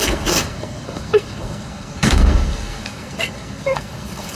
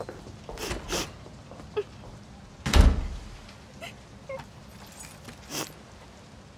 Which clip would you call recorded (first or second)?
second